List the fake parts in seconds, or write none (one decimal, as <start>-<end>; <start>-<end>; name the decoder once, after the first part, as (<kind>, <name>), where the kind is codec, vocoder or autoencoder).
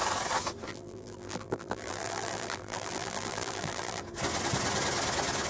0.7-4.0 (vocoder, BigVGAN v2)